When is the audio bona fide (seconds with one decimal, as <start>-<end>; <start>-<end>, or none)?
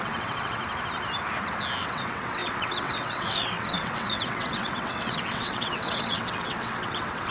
0.6-1.8